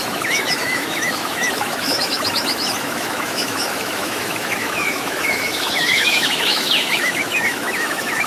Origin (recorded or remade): remade